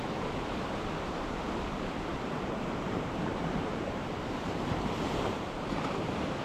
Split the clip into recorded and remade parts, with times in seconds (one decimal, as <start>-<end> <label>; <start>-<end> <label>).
0.0-2.1 recorded; 2.1-5.7 remade; 5.7-6.4 recorded